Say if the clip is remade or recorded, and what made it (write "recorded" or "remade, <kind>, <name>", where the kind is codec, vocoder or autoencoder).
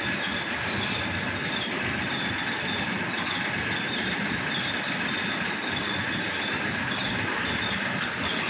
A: remade, vocoder, BigVGAN v2